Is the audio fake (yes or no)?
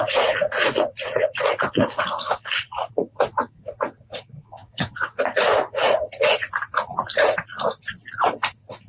yes